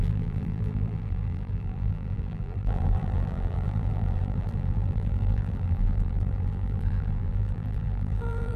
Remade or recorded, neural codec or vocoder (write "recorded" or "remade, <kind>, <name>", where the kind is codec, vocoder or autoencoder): remade, vocoder, BigVGAN v2